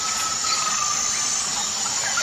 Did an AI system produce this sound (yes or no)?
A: no